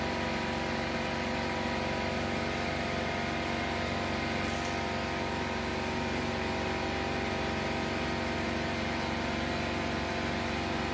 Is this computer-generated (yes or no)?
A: no